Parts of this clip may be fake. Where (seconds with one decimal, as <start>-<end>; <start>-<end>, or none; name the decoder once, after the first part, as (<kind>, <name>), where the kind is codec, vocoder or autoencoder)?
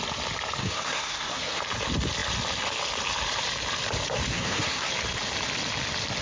0.6-1.6 (codec, SNAC); 4.3-4.9